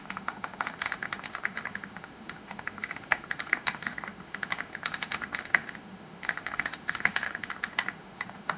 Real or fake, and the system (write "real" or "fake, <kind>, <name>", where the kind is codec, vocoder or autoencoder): fake, autoencoder, DAC-VAE